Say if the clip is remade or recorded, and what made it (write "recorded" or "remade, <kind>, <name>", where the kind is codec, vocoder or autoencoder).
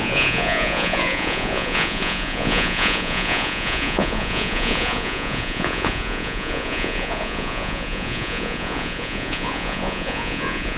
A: remade, vocoder, Vocos